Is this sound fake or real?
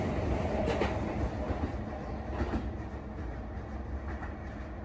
real